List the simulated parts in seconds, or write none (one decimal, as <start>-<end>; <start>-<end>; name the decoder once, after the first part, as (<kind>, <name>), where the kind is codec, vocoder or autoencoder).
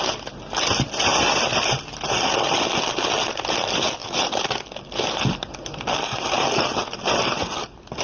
none